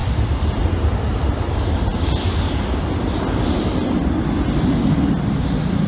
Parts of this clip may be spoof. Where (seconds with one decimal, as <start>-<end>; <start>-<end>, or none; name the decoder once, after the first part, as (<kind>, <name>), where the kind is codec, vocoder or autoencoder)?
none